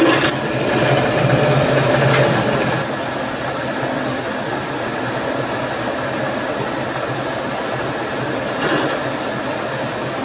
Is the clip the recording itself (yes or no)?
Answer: yes